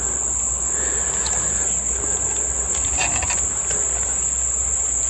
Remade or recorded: recorded